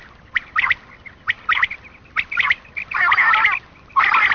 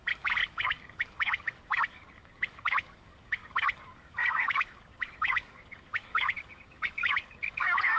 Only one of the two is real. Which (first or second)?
first